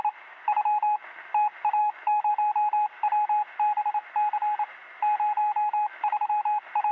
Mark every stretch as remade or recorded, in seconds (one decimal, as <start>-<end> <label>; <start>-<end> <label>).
0.0-1.8 recorded; 1.8-2.3 remade; 2.3-5.4 recorded; 5.4-6.3 remade; 6.3-6.9 recorded

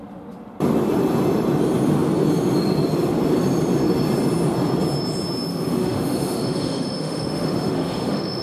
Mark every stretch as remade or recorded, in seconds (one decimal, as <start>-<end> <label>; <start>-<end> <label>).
0.0-5.5 recorded; 5.5-8.4 remade

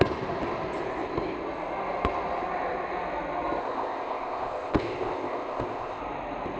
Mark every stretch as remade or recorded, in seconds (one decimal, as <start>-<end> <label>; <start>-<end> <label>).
0.0-3.6 recorded; 3.6-6.0 remade; 6.0-6.6 recorded

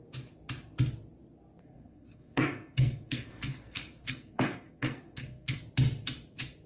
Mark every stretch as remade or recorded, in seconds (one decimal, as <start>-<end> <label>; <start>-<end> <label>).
0.0-1.6 recorded; 1.6-5.6 remade; 5.6-6.7 recorded

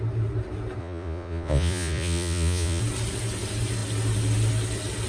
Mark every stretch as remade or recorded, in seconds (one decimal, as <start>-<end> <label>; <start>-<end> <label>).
0.0-0.8 recorded; 0.8-2.8 remade; 2.8-5.1 recorded